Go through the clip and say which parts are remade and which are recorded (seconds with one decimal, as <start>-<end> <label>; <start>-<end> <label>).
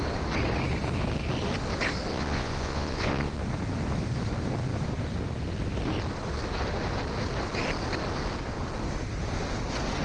0.0-2.1 recorded; 2.1-3.4 remade; 3.4-10.0 recorded